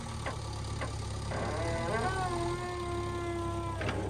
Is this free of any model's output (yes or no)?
yes